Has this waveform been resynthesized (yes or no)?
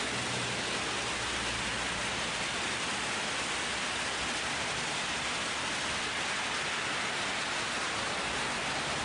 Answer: no